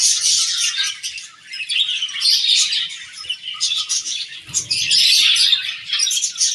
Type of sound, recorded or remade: recorded